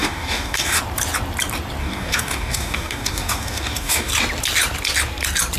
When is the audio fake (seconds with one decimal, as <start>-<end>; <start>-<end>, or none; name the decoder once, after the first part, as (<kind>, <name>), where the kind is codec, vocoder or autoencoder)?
0.0-0.8 (codec, DAC); 1.8-4.1

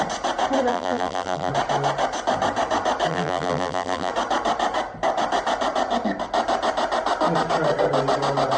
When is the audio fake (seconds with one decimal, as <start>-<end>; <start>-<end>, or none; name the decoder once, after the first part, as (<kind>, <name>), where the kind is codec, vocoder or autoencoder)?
0.7-1.5 (vocoder, BigVGAN v2); 3.1-4.1

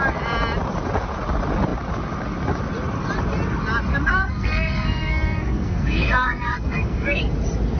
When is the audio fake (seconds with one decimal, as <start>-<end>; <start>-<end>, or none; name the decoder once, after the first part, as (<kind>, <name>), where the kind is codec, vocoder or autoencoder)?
3.9-7.2 (codec, SNAC)